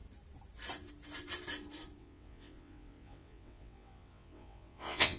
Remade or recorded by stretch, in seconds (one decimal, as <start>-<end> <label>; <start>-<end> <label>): 0.0-2.0 recorded; 2.0-5.2 remade